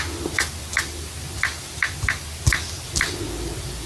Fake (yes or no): no